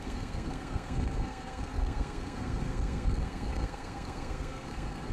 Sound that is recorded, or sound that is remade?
remade